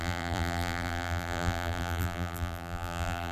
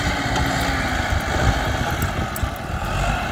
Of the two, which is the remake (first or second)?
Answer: first